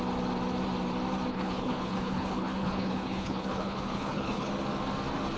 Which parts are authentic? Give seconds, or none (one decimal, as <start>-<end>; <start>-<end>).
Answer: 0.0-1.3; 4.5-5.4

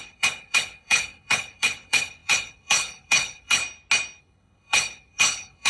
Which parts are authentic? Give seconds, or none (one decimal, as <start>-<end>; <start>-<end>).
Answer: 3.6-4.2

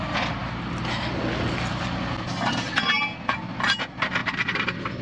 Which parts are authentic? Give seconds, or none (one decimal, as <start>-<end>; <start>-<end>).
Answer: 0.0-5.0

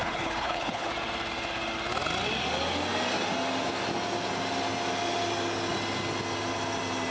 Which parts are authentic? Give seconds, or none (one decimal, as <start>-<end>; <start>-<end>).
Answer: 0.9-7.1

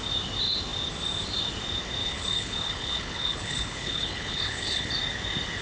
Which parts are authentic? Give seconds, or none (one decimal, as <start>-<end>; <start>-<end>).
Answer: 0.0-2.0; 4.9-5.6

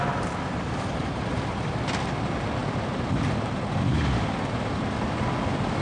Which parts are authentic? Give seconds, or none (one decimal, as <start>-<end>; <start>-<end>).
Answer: 0.0-5.8

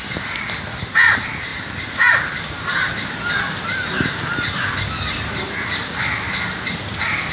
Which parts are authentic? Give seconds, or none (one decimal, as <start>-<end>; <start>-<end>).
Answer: 0.0-7.3